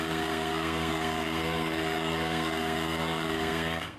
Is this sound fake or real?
fake